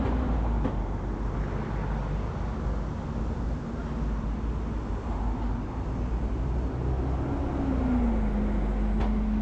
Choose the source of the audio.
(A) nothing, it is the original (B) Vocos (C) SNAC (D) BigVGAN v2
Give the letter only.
A